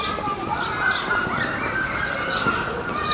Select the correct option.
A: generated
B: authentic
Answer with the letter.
B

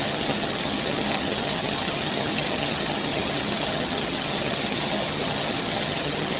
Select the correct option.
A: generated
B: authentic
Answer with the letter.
A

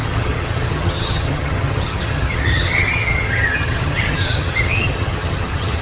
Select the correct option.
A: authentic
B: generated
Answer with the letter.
B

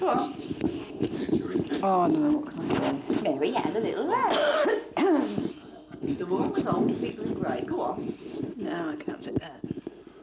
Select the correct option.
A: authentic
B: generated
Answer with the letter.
A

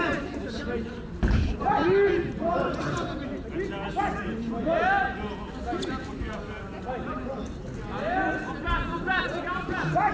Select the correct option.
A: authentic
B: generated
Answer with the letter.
A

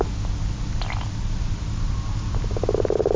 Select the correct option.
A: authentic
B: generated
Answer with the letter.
A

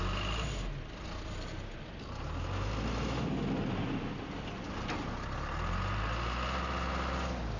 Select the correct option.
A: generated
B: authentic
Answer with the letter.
B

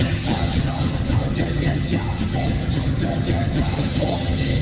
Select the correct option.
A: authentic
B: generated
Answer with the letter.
B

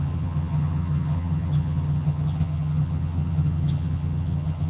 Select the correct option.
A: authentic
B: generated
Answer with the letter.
B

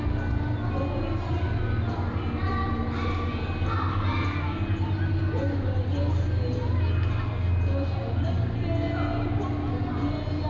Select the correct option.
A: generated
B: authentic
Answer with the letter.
B